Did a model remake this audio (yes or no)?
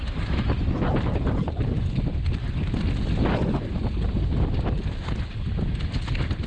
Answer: no